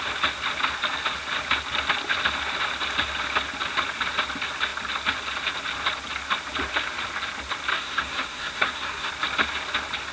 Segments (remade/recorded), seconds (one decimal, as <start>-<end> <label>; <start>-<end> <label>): 0.0-7.7 recorded; 7.7-9.1 remade; 9.1-10.1 recorded